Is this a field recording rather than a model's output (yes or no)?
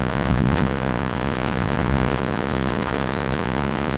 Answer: no